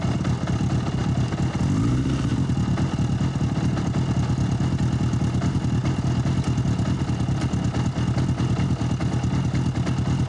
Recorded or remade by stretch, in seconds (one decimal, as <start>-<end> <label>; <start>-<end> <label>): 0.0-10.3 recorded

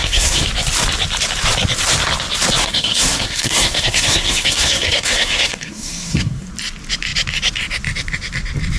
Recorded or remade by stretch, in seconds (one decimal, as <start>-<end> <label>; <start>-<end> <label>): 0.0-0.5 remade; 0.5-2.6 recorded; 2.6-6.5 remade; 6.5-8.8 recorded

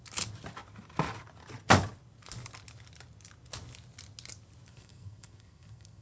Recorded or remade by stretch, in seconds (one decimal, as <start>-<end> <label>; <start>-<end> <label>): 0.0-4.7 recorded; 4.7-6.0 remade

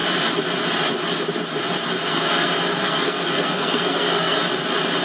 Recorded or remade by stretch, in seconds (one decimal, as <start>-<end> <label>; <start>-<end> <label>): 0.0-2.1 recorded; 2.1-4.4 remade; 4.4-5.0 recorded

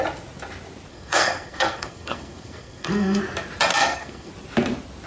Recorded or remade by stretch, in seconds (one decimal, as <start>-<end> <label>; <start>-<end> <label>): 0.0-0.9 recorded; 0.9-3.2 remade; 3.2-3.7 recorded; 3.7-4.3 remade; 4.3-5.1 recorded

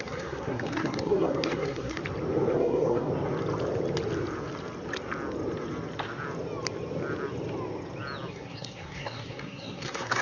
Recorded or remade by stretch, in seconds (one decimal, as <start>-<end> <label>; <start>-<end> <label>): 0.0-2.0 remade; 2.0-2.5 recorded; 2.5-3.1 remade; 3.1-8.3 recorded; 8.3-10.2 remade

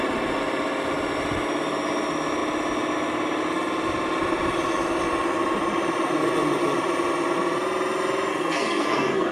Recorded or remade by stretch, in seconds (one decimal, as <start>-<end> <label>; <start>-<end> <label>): 0.0-8.3 recorded; 8.3-9.3 remade